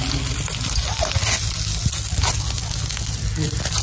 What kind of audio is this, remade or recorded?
recorded